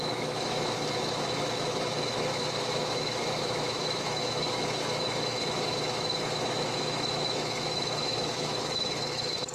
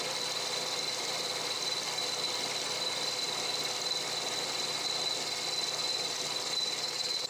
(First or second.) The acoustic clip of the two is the second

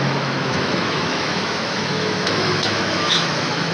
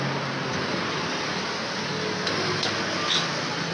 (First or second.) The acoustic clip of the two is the second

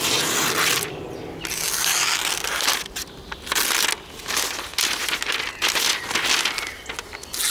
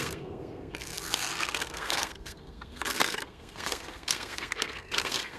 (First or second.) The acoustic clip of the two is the first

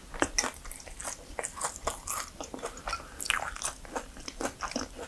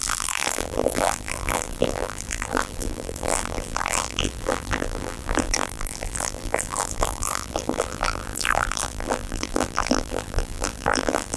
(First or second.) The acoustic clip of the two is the first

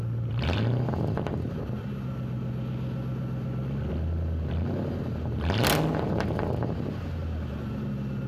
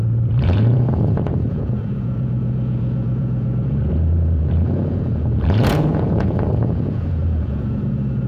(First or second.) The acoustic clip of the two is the first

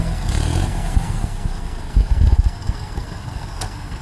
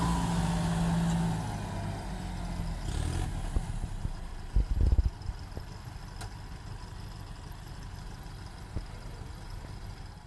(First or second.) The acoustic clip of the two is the second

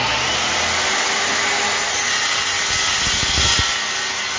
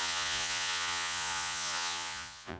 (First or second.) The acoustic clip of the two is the first